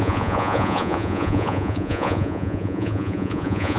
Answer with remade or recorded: remade